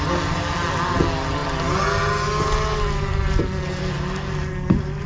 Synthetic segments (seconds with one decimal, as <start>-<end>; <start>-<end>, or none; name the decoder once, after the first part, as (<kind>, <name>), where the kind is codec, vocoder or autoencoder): none